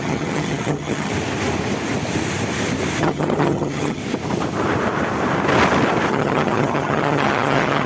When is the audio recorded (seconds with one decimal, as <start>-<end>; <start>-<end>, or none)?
1.1-3.0; 4.0-6.1